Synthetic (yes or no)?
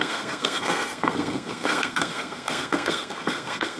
yes